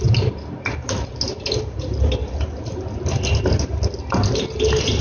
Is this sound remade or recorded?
recorded